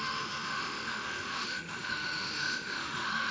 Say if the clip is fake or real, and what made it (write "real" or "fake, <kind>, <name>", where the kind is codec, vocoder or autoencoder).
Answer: fake, autoencoder, DAC-VAE